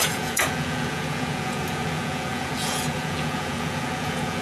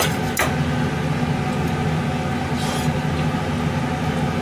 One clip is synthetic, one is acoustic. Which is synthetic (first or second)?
first